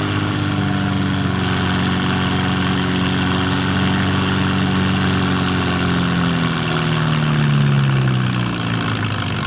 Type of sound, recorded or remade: recorded